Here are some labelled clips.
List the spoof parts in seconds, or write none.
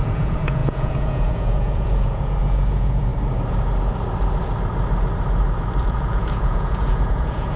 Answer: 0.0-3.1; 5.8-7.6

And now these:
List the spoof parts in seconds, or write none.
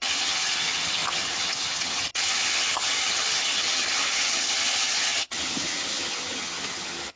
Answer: 0.0-7.2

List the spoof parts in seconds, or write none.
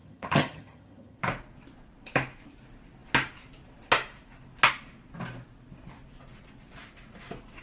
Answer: 0.0-1.2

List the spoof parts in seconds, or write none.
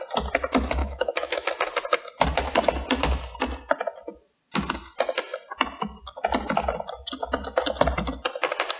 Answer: 0.8-1.5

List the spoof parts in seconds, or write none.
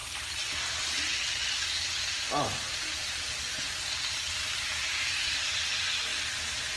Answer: 4.1-6.1